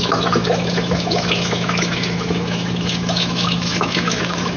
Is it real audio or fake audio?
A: fake